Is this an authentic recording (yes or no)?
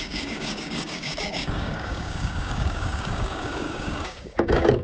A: no